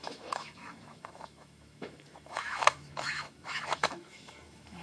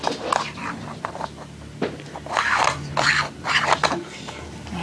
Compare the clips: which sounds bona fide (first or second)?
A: second